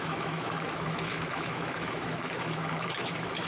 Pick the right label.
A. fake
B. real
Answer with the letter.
A